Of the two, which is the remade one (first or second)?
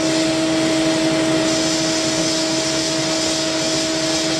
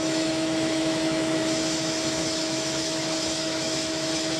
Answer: second